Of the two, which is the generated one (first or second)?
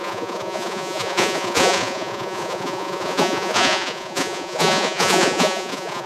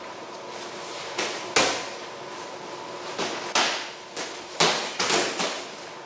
first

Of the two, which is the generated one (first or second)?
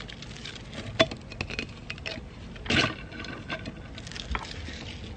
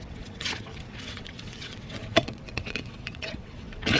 second